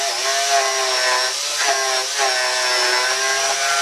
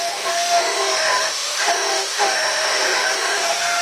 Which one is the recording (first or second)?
first